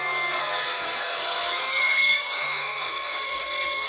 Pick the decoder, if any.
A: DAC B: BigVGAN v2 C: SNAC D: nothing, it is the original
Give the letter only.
C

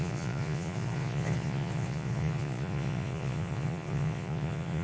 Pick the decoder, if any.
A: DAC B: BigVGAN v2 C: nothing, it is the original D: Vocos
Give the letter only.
D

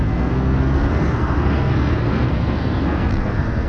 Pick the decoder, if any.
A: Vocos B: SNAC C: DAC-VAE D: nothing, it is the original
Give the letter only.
B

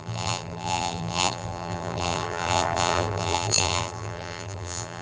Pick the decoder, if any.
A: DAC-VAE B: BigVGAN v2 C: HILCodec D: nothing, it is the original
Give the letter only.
B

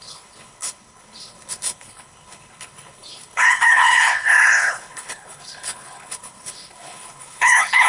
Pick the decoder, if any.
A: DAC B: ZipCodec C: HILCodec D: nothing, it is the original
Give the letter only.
C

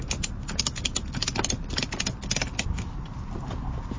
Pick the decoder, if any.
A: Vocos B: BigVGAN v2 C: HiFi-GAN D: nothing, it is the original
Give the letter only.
D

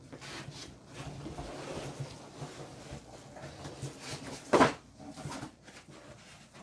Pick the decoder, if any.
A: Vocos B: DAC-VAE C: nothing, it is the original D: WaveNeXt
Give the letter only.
C